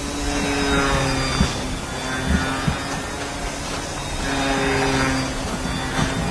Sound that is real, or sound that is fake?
real